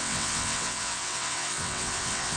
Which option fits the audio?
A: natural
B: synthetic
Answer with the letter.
B